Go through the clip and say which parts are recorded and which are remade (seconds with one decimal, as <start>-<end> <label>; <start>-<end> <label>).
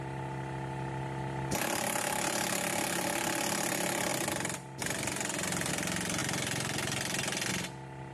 0.0-6.2 recorded; 6.2-7.5 remade; 7.5-8.1 recorded